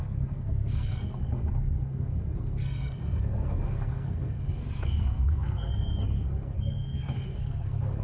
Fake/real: fake